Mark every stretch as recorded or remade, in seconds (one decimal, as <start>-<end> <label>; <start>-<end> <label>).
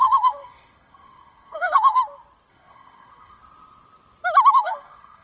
0.0-2.0 remade; 2.0-2.5 recorded; 2.5-3.4 remade; 3.4-4.5 recorded; 4.5-5.2 remade